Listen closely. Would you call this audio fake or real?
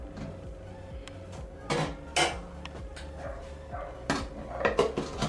real